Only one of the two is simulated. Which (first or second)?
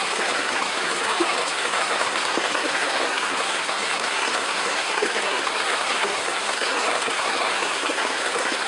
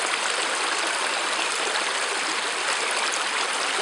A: first